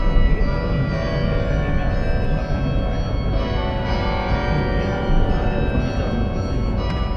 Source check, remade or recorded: recorded